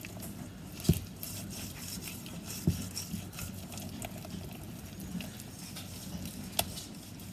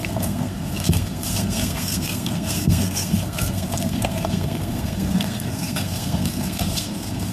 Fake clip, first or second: second